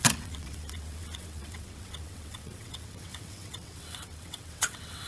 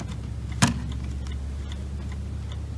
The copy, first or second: first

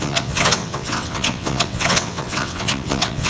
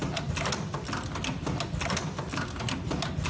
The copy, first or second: first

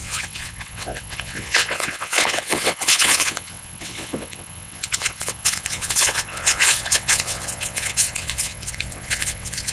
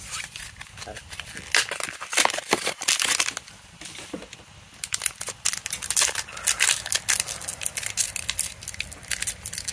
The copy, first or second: first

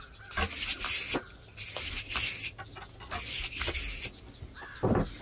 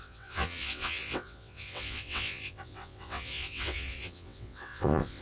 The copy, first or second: second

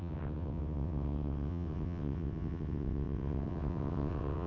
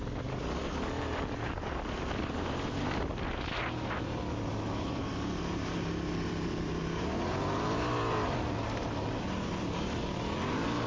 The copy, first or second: first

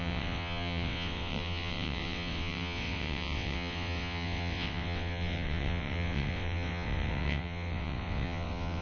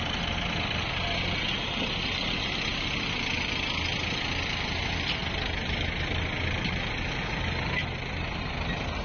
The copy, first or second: first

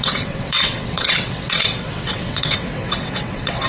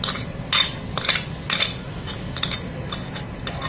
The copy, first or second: first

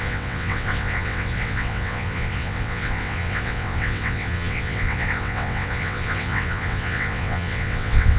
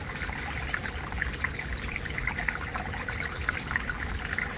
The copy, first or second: first